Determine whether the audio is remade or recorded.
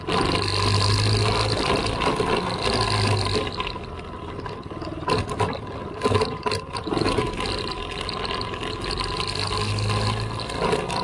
recorded